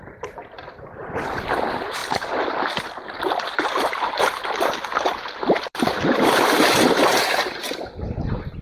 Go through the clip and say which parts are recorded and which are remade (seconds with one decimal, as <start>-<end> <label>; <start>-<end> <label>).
0.0-2.0 remade; 2.0-3.2 recorded; 3.2-8.6 remade